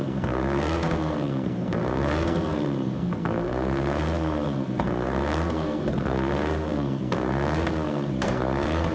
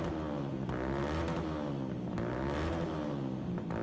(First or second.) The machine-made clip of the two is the first